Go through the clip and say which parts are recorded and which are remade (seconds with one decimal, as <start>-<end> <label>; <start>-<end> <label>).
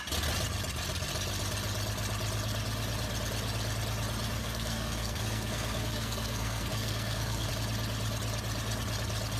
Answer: 0.0-4.4 recorded; 4.4-7.5 remade; 7.5-9.4 recorded